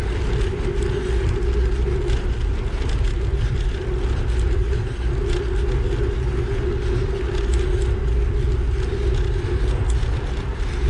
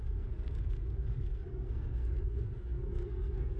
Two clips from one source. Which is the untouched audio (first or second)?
first